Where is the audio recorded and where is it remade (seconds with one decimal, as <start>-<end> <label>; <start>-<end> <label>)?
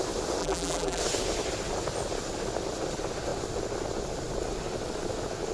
0.0-0.4 recorded; 0.4-1.0 remade; 1.0-5.5 recorded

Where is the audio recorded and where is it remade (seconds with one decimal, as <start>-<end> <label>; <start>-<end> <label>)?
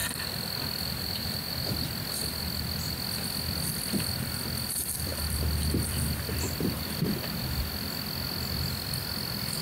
0.0-1.5 remade; 1.5-5.1 recorded; 5.1-6.8 remade; 6.8-9.6 recorded